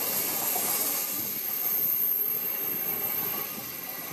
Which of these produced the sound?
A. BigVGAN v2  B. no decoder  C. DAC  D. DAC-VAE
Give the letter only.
B